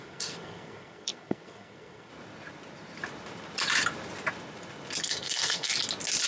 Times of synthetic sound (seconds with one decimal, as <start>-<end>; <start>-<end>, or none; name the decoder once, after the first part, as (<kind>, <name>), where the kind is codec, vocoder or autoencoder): 0.0-2.1 (codec, SNAC); 5.0-5.7